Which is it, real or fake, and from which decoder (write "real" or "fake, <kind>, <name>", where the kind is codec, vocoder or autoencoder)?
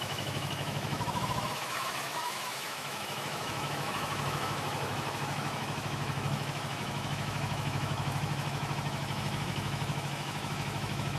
fake, autoencoder, DAC-VAE